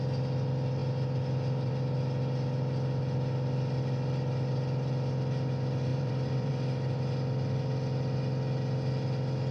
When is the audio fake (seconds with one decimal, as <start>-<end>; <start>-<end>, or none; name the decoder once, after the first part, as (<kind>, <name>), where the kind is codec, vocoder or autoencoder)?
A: 5.9-6.5 (vocoder, BigVGAN v2)